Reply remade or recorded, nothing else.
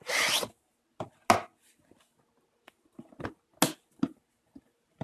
recorded